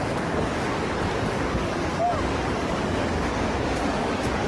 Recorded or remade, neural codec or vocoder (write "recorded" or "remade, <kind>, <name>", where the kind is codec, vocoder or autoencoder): remade, codec, DAC